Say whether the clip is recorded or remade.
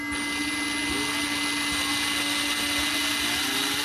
recorded